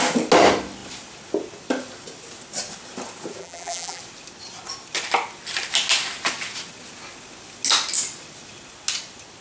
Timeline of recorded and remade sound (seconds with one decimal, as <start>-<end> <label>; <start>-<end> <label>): 0.0-3.4 recorded; 3.4-4.0 remade; 4.0-9.4 recorded